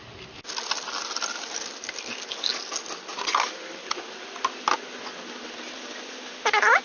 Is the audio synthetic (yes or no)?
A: no